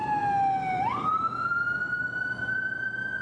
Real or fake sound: real